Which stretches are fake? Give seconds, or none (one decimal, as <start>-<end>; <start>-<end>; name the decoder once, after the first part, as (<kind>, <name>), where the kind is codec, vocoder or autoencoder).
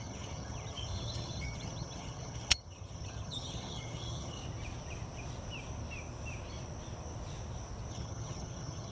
0.0-4.4 (vocoder, HiFi-GAN); 7.9-8.9